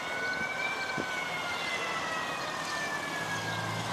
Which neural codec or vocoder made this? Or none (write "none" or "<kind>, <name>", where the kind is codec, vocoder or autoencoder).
none